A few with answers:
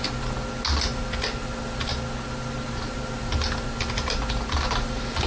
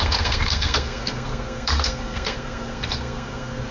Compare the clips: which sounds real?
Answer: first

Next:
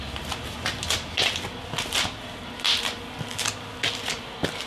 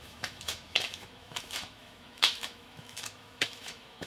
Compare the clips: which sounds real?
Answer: first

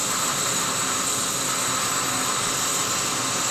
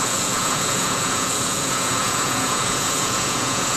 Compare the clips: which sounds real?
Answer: first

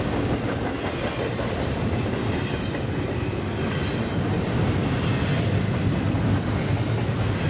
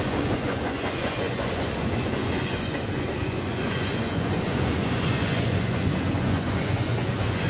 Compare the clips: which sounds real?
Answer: first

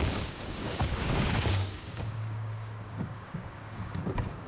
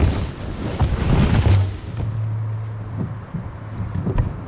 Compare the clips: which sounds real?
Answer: second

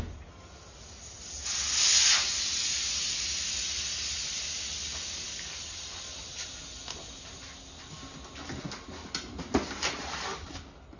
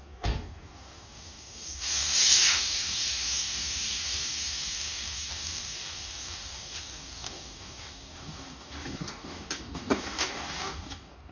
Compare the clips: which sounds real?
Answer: first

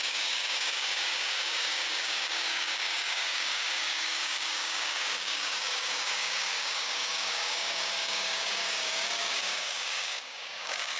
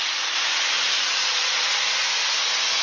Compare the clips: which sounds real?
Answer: second